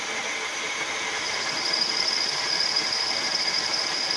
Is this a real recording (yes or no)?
yes